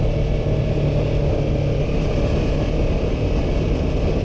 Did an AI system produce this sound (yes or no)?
no